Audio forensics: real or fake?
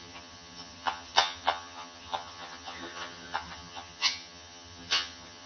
fake